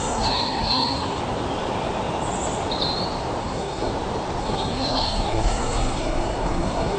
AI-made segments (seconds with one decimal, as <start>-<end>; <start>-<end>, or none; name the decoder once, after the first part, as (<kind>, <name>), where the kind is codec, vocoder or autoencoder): 0.0-1.2 (codec, SNAC); 3.4-3.9; 4.4-7.0